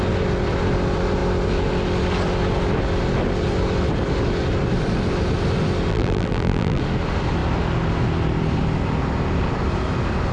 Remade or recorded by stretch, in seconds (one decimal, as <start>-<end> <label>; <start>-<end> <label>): 0.0-5.9 recorded; 5.9-6.8 remade; 6.8-10.3 recorded